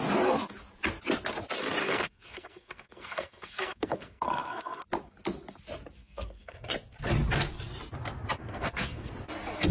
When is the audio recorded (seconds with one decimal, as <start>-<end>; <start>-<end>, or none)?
0.0-1.8; 4.8-6.0; 6.7-8.4; 9.1-9.7

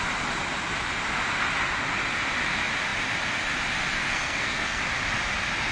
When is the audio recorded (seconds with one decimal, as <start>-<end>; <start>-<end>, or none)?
0.0-4.0; 4.8-5.7

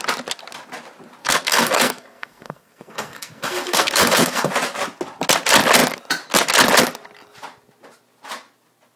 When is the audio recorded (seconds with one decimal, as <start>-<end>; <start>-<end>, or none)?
0.0-1.2; 4.5-9.0

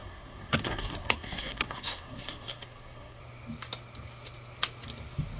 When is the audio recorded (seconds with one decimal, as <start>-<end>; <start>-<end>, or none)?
3.2-5.4

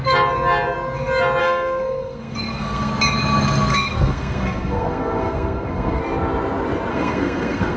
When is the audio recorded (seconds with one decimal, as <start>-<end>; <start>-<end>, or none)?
0.0-1.4; 2.9-3.7; 6.0-6.9

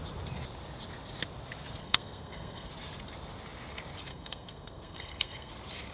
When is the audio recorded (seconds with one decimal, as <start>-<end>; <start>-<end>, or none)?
0.0-1.8; 2.7-4.1; 5.5-5.9

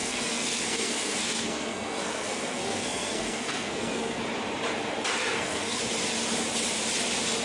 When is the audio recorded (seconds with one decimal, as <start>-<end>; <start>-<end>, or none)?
4.2-5.2; 5.8-7.4

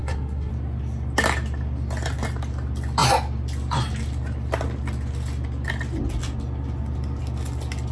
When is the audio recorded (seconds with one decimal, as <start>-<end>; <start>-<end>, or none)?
0.5-7.9